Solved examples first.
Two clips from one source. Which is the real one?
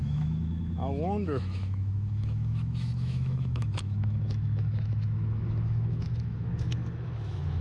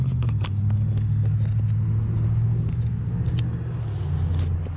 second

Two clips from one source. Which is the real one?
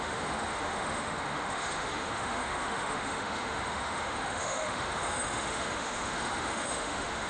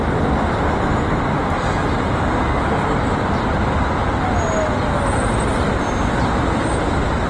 second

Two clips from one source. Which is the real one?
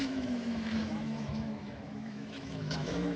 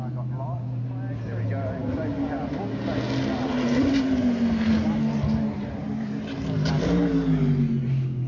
second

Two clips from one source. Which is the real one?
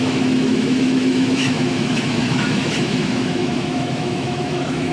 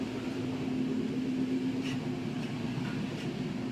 second